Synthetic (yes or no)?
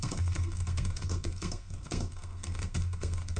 yes